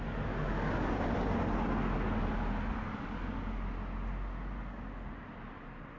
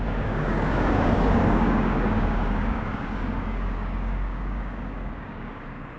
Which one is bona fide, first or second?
first